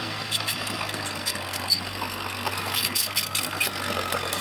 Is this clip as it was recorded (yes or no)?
no